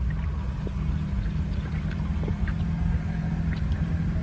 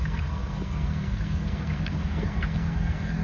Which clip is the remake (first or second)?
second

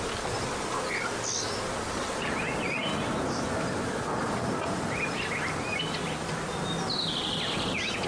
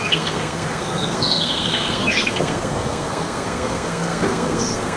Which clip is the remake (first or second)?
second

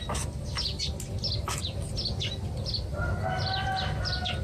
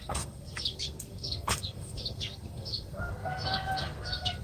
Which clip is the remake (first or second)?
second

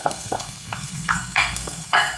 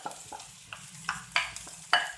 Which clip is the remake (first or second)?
first